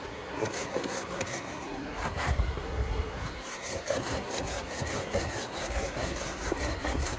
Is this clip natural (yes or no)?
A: no